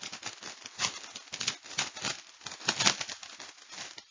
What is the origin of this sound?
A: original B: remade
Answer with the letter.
A